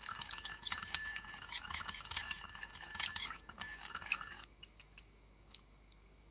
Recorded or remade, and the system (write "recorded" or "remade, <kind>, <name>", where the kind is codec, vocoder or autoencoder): remade, codec, DAC